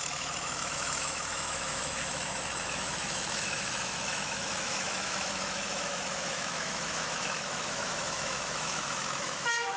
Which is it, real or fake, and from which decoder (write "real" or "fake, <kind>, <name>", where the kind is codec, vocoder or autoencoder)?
fake, autoencoder, DAC-VAE